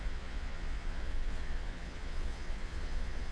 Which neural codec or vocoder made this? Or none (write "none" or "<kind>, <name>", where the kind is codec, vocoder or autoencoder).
vocoder, Vocos